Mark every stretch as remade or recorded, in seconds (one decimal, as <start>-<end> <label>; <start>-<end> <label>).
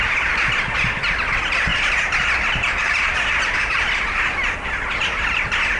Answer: 0.0-5.8 recorded